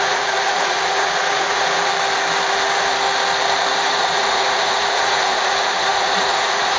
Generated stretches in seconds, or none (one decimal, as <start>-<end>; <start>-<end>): 0.0-1.9; 3.9-6.8